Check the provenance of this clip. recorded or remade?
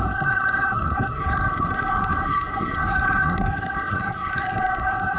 remade